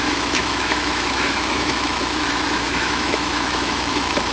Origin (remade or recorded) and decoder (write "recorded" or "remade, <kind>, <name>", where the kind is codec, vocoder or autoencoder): remade, autoencoder, DAC-VAE